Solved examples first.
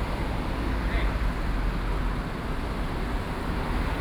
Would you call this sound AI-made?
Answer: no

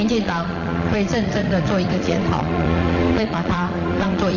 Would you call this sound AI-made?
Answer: yes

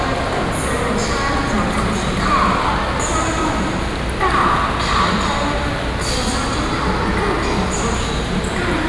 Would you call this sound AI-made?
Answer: no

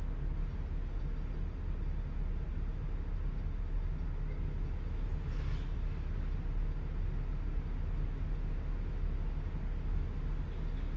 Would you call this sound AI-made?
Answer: no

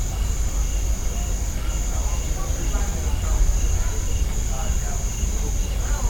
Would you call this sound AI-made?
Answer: no